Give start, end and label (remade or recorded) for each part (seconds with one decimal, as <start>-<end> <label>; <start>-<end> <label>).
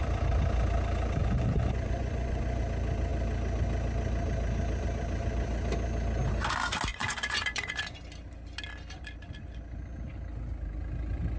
0.0-1.2 recorded; 1.2-2.6 remade; 2.6-6.9 recorded; 6.9-7.8 remade; 7.8-11.4 recorded